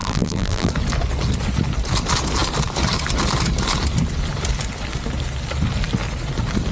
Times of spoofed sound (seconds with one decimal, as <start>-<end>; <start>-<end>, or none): 0.0-0.7